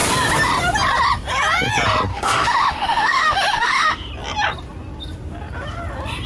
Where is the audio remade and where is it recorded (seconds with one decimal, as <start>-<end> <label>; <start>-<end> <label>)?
0.0-2.1 recorded; 2.1-4.1 remade; 4.1-6.3 recorded